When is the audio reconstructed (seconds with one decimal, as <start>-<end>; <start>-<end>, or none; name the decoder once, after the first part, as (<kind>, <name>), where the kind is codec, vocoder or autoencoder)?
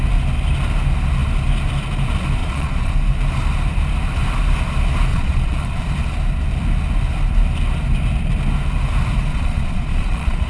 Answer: 2.4-2.9 (vocoder, Vocos); 5.1-5.8; 9.3-10.5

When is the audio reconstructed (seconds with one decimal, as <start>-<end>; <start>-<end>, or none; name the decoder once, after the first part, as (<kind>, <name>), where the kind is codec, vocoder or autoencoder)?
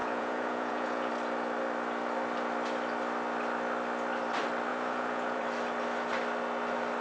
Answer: 0.0-1.1 (vocoder, Vocos); 4.7-5.4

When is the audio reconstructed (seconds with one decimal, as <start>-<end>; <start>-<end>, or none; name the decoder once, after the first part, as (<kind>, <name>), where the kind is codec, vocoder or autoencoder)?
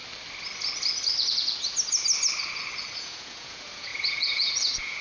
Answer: 3.0-5.0 (vocoder, Vocos)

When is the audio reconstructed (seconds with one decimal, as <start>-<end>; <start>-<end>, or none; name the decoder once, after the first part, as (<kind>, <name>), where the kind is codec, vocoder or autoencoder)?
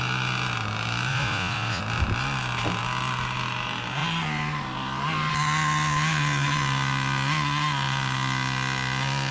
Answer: 1.1-1.8 (vocoder, Vocos)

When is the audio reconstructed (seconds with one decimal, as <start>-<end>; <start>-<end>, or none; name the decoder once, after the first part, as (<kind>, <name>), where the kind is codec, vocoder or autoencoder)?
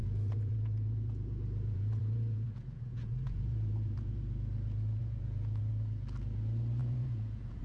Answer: 0.0-4.2 (vocoder, Vocos); 5.0-5.6; 6.8-7.6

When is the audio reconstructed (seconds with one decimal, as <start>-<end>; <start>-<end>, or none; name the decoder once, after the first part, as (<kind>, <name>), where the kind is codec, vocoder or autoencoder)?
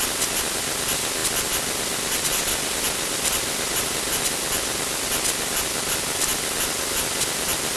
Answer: none